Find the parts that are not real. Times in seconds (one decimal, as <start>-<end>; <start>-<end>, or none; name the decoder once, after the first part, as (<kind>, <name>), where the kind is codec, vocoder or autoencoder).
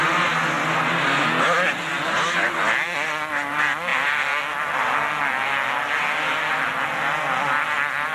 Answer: none